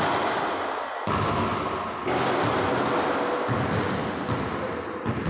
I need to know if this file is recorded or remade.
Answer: recorded